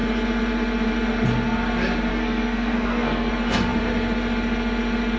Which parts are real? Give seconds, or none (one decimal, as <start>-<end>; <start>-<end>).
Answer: 0.0-2.1; 3.3-5.2